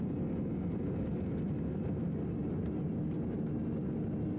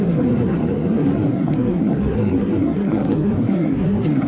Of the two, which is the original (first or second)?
first